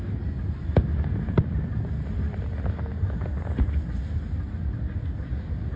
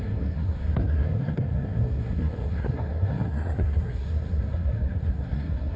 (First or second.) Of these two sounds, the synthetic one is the second